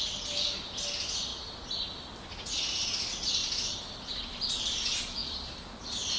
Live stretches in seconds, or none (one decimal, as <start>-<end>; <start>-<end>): 0.0-6.2